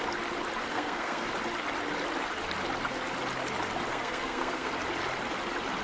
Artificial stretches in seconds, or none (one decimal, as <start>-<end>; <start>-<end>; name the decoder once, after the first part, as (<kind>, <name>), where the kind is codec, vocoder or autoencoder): 0.7-1.3 (codec, SNAC); 3.9-4.7